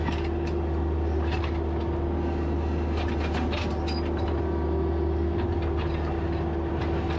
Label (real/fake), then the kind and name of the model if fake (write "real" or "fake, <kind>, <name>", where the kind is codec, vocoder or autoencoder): real